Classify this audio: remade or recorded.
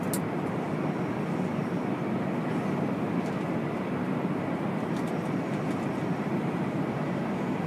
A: recorded